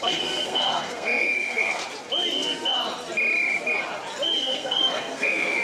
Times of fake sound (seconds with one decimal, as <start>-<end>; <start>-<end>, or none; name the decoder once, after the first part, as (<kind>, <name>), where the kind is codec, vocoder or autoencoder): 0.0-1.8 (codec, SNAC); 4.4-5.6